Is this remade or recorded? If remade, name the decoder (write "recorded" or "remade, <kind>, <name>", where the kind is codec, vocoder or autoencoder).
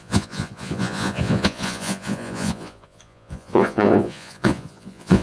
remade, vocoder, Vocos